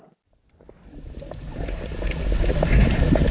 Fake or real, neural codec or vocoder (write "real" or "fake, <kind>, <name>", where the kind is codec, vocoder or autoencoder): real